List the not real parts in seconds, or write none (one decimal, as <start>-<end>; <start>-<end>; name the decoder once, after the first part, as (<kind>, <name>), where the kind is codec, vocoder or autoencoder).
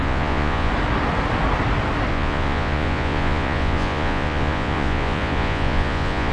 0.0-0.7 (vocoder, Vocos); 2.1-6.3